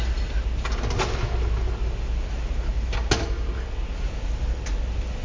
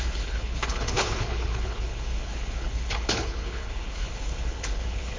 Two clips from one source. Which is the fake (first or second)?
second